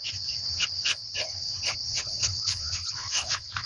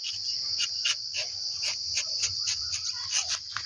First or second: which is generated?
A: first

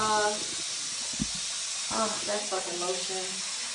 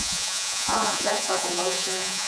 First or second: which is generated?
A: second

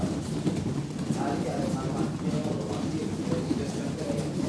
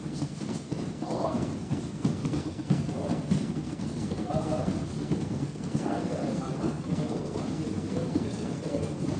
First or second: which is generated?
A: second